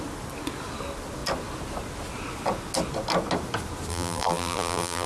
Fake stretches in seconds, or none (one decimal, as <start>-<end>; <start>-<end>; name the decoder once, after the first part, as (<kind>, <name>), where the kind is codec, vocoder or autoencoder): 3.9-5.1 (vocoder, BigVGAN v2)